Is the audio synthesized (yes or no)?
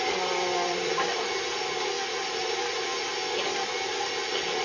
no